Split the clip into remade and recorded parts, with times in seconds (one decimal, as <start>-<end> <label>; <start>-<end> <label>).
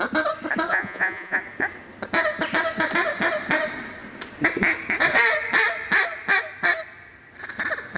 0.0-0.7 recorded; 0.7-1.4 remade; 1.4-8.0 recorded